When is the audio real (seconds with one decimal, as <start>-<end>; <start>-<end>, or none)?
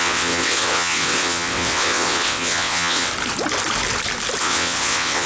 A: 3.1-4.4